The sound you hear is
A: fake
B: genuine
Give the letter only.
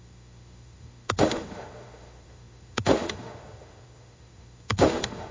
A